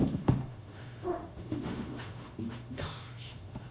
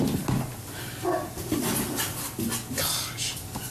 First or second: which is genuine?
second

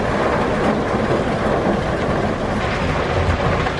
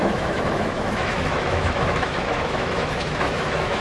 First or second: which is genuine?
first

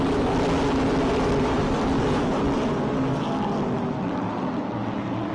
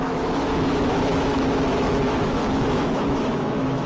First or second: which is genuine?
first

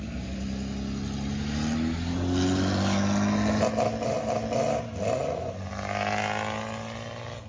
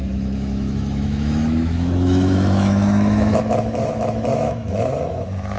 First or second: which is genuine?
first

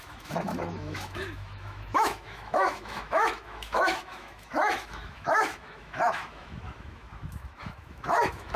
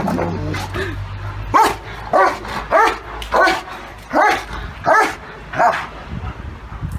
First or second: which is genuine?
second